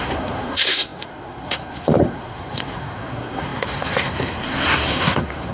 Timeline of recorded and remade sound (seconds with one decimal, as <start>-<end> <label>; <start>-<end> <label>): 0.0-5.5 remade